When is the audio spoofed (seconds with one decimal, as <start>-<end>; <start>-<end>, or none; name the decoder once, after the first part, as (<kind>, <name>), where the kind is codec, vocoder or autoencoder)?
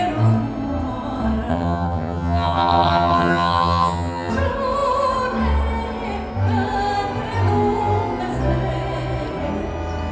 1.5-4.3 (vocoder, HiFi-GAN)